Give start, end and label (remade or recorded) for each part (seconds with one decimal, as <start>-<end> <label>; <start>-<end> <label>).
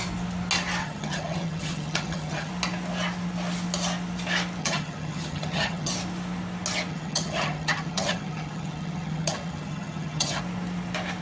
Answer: 0.0-0.8 recorded; 0.8-2.5 remade; 2.5-4.6 recorded; 4.6-5.9 remade; 5.9-6.9 recorded; 6.9-10.4 remade; 10.4-11.2 recorded